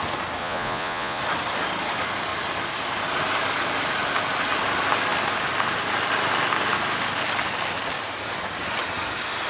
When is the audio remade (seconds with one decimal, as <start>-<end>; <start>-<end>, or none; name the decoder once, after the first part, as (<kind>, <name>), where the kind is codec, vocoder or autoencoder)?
0.4-1.2 (vocoder, Vocos)